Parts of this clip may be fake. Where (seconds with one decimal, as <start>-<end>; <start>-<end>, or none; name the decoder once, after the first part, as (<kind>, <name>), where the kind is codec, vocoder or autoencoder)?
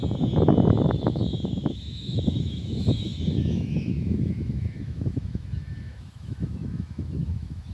0.8-7.7 (autoencoder, DAC-VAE)